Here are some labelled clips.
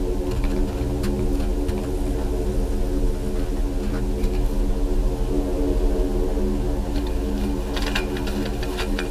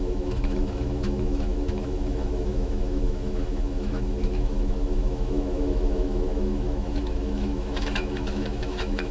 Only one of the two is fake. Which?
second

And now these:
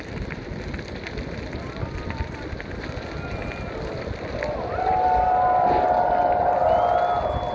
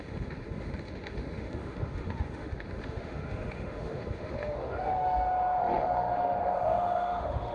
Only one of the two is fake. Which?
second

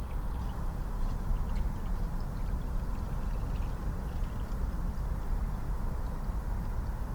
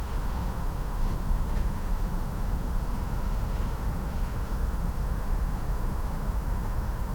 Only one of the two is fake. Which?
second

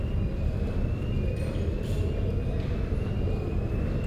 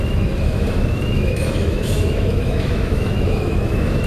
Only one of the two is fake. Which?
second